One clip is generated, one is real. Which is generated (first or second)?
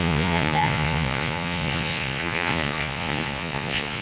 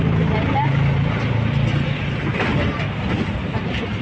first